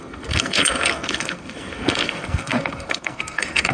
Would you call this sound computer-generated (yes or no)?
yes